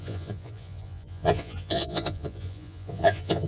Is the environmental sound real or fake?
fake